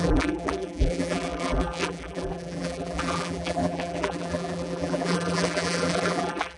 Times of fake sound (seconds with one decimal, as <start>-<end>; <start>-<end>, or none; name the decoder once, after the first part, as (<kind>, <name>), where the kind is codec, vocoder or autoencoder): 0.0-6.6 (vocoder, BigVGAN v2)